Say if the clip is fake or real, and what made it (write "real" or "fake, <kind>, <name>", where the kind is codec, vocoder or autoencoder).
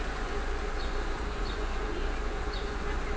fake, vocoder, Vocos